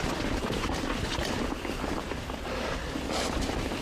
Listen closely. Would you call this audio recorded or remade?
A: recorded